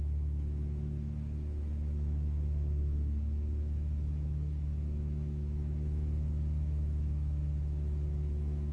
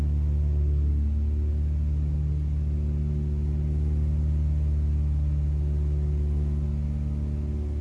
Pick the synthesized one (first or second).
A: first